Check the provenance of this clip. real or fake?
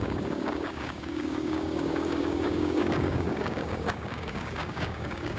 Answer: fake